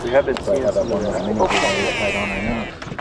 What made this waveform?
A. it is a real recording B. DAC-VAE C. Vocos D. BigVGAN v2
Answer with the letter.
A